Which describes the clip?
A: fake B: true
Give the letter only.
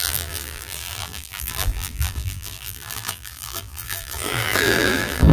A